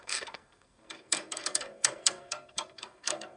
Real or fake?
fake